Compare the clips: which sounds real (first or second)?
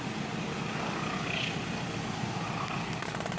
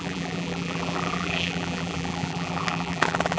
first